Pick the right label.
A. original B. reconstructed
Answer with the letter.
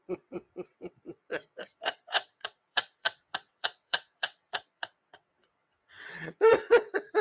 B